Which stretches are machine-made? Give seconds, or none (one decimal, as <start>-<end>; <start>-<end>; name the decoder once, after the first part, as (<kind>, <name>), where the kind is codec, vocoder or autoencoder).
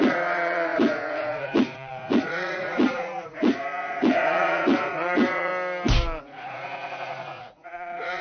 0.0-5.5 (vocoder, Vocos); 6.2-8.2